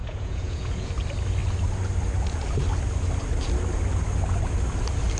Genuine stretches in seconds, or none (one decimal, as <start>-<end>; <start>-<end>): 0.9-5.2